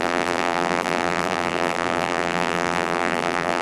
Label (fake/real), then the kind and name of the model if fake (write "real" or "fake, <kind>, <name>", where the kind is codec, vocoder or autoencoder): fake, vocoder, BigVGAN v2